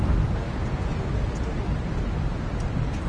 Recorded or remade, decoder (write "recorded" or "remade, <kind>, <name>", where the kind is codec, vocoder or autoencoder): recorded